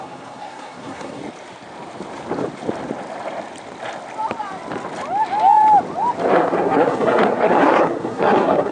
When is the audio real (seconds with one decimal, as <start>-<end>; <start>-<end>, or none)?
1.2-6.3